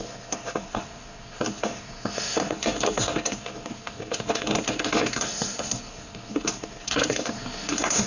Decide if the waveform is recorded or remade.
remade